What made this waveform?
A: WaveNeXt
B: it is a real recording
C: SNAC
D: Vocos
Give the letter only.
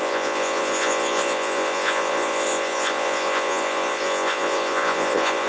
D